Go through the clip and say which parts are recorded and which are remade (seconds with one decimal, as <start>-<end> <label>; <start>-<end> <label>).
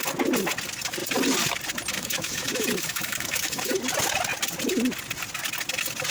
0.0-1.9 recorded; 1.9-3.8 remade; 3.8-6.1 recorded